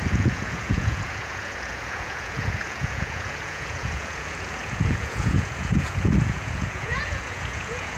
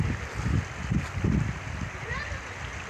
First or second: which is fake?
first